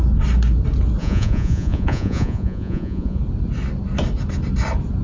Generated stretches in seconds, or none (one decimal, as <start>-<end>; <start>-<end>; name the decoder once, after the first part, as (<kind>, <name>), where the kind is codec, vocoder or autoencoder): 1.0-3.2 (vocoder, Vocos)